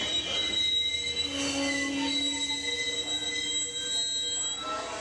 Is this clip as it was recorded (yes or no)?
yes